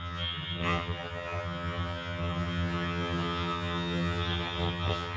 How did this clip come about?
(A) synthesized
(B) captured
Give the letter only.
A